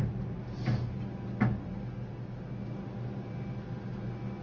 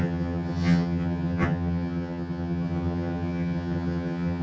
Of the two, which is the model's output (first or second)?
second